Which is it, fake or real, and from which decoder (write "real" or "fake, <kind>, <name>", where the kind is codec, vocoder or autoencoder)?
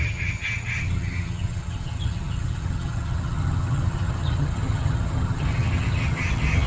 fake, vocoder, HiFi-GAN